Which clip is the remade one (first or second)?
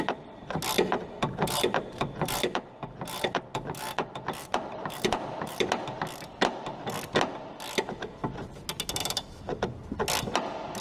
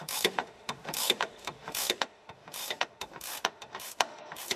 second